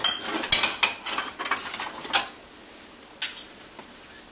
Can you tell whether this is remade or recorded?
recorded